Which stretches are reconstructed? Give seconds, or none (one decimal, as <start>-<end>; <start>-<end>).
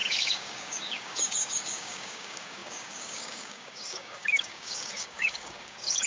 0.0-6.1